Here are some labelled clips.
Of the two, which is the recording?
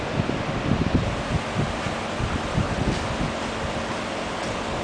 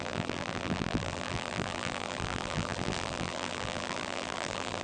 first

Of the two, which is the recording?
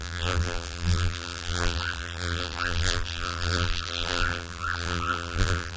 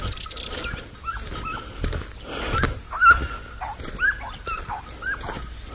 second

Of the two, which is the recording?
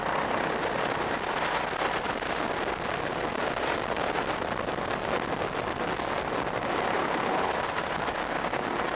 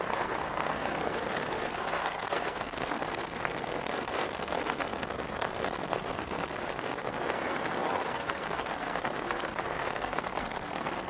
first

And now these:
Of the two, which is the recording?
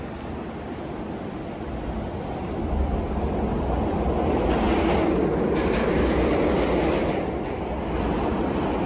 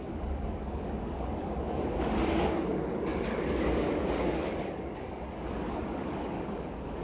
first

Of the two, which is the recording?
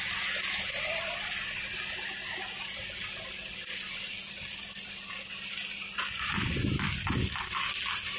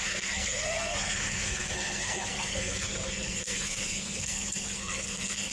first